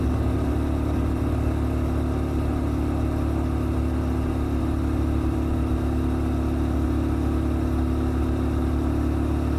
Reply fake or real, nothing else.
real